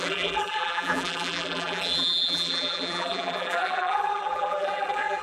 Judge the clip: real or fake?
fake